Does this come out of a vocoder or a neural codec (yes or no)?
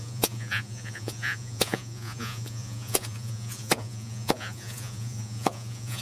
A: yes